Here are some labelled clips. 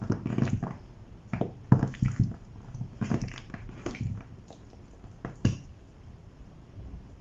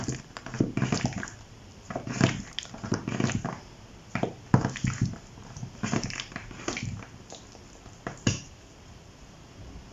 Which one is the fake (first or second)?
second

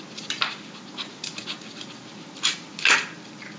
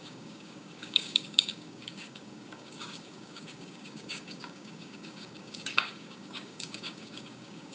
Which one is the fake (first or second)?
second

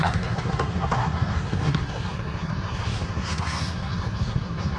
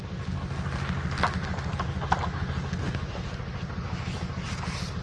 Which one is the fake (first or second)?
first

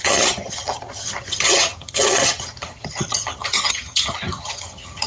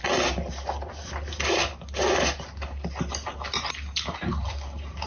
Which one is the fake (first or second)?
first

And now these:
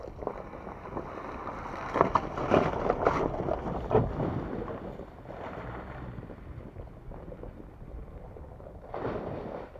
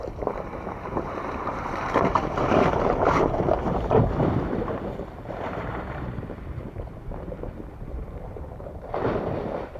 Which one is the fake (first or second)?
second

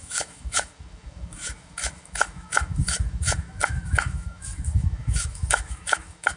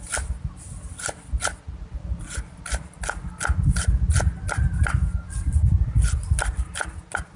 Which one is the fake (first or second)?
first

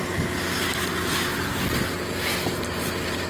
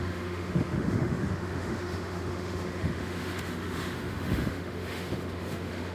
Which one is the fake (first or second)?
second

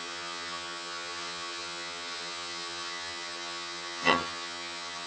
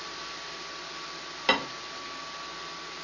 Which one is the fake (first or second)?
first